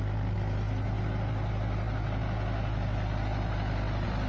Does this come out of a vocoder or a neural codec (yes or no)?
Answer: no